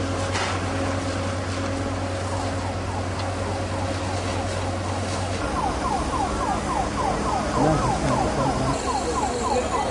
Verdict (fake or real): real